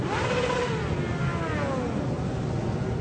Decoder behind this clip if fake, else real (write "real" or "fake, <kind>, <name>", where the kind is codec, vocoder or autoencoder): real